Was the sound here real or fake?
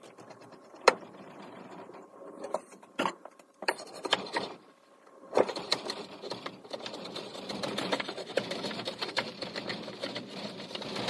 fake